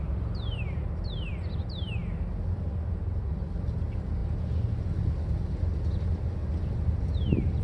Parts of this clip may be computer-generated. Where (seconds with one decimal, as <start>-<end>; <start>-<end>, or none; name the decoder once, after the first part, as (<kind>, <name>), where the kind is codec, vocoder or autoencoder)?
none